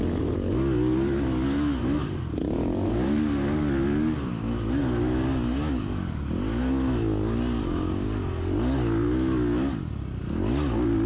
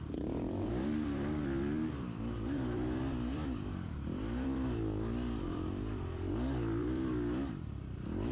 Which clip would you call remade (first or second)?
second